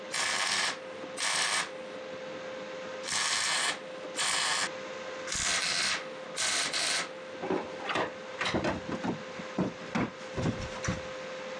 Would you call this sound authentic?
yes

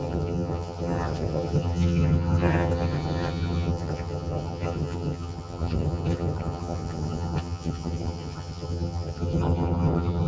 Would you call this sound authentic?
no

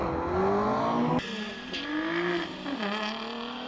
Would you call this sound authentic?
yes